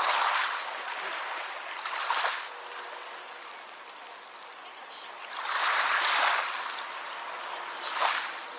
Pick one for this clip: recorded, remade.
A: recorded